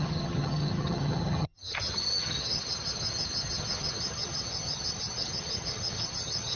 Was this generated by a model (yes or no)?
yes